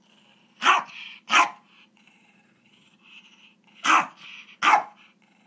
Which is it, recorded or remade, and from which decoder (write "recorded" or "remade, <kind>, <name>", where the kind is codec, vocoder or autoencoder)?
recorded